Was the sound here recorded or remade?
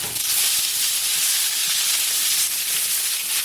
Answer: recorded